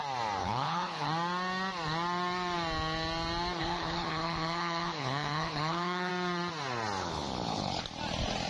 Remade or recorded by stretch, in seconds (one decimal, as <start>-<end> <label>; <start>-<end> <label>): 0.0-0.4 recorded; 0.4-1.1 remade; 1.1-3.6 recorded; 3.6-6.1 remade; 6.1-7.0 recorded; 7.0-7.8 remade; 7.8-8.5 recorded